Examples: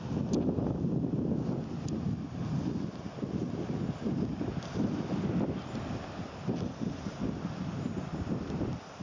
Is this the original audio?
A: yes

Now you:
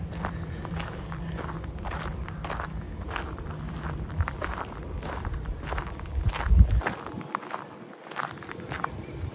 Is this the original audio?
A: yes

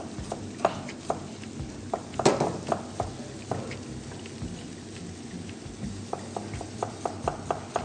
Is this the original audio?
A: yes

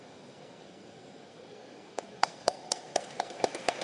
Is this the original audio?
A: no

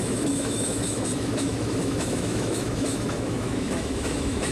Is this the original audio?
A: no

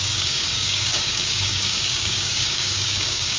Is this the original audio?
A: no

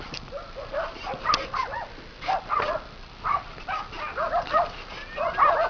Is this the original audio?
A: yes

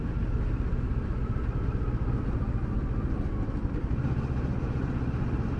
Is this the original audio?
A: yes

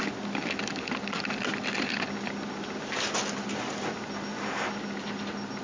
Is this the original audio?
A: yes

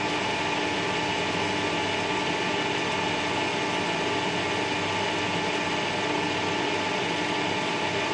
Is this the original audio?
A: yes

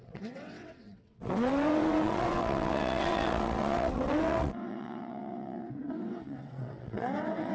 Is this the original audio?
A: no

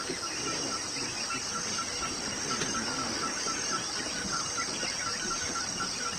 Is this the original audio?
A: yes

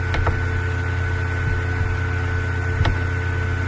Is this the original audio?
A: yes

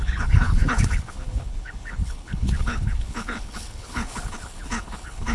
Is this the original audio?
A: no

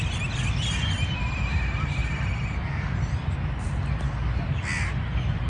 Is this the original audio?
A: yes